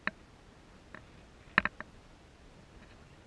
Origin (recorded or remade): recorded